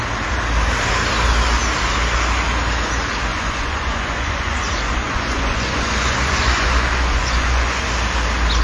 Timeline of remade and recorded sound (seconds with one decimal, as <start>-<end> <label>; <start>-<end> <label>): 0.0-3.3 recorded; 3.3-7.8 remade; 7.8-8.6 recorded